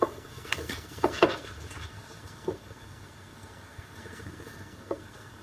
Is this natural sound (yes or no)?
no